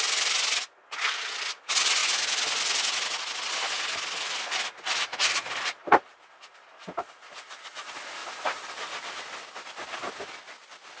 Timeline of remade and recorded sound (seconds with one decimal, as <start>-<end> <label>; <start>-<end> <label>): 0.0-5.8 recorded; 5.8-6.3 remade; 6.3-8.2 recorded; 8.2-9.3 remade; 9.3-11.0 recorded